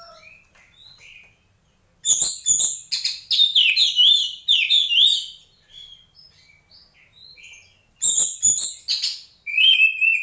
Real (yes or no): yes